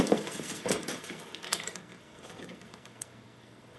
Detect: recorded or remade remade